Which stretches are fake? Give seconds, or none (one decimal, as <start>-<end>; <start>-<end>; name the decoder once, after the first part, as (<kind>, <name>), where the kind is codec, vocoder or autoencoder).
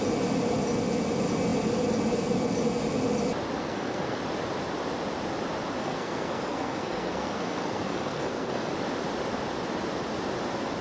3.6-4.2 (codec, SNAC); 5.8-8.7